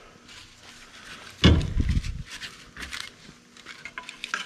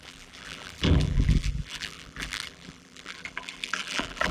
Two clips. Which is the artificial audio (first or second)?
second